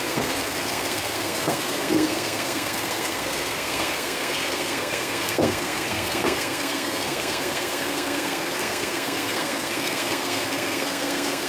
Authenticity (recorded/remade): remade